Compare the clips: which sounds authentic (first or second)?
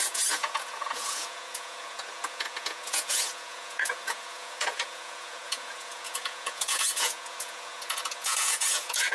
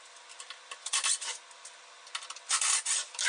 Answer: second